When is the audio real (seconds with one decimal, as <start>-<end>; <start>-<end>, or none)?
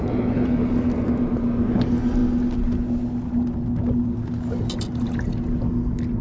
0.0-6.2